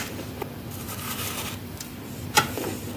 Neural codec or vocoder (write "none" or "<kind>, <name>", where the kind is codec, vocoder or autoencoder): vocoder, BigVGAN v2